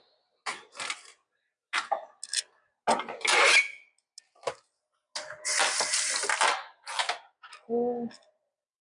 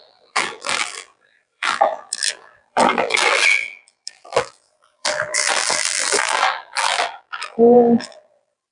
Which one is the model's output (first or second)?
second